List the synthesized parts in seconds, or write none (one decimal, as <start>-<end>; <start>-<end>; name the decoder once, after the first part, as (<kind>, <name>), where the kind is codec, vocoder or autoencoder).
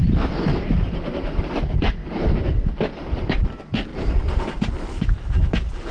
0.5-1.5 (vocoder, BigVGAN v2); 3.9-4.7